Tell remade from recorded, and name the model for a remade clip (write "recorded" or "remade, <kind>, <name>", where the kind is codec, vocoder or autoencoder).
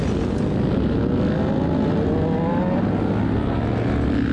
recorded